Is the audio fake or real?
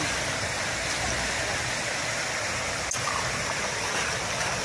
real